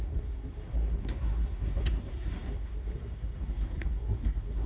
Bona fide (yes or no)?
no